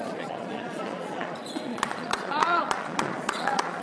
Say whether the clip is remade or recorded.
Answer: remade